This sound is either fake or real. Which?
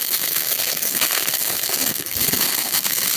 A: fake